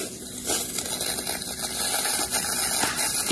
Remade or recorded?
recorded